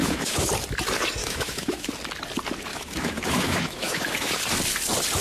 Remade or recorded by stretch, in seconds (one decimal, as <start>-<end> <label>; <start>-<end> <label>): 0.0-0.5 remade; 0.5-1.2 recorded; 1.2-1.9 remade; 1.9-2.7 recorded; 2.7-4.4 remade; 4.4-5.2 recorded